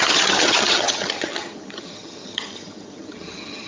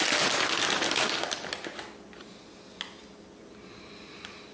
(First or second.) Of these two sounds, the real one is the second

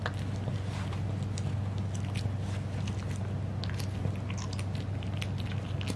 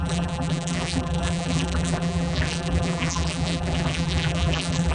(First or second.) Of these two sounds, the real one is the first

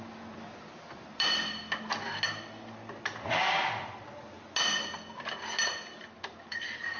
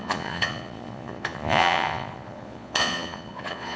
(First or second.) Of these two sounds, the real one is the first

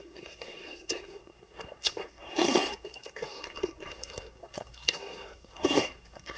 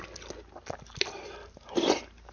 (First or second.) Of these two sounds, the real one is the second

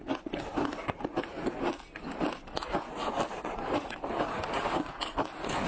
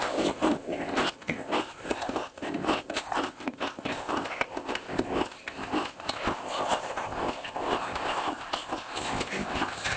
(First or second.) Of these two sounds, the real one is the first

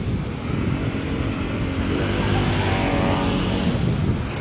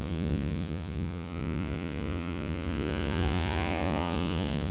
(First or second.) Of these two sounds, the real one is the first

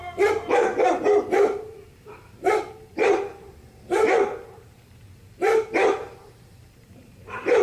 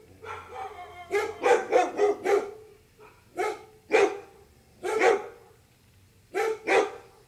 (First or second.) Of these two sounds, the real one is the second